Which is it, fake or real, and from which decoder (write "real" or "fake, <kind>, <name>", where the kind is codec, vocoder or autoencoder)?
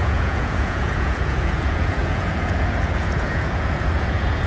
fake, vocoder, Vocos